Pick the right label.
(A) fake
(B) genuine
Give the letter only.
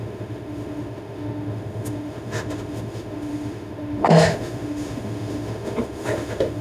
A